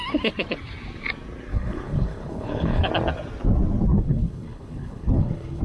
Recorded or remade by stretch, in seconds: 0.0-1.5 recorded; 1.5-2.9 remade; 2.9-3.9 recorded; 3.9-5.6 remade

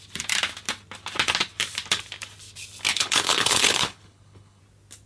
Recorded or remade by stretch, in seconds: 0.0-2.9 recorded; 2.9-4.6 remade; 4.6-5.1 recorded

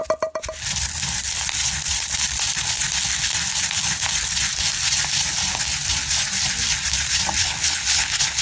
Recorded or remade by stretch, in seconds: 0.0-7.4 recorded; 7.4-8.4 remade

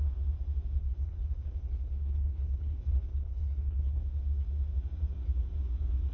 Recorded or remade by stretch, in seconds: 0.0-0.8 recorded; 0.8-4.0 remade; 4.0-6.1 recorded

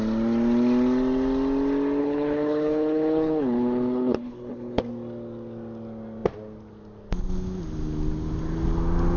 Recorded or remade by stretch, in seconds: 0.0-2.0 recorded; 2.0-4.8 remade; 4.8-9.2 recorded

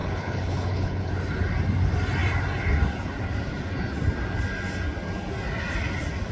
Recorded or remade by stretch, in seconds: 0.0-1.1 remade; 1.1-6.3 recorded